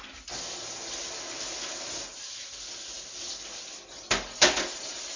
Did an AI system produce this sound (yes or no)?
no